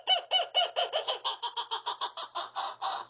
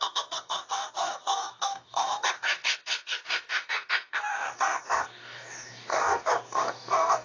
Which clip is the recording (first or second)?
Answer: first